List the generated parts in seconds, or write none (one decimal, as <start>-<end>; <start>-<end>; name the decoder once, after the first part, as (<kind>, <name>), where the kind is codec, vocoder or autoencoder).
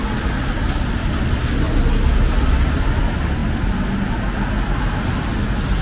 none